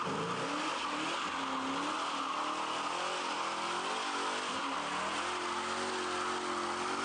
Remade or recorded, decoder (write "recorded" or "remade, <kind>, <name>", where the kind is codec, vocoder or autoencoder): recorded